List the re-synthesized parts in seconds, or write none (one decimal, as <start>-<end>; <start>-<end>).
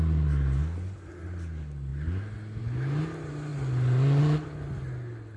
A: none